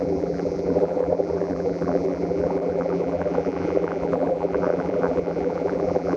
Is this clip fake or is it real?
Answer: fake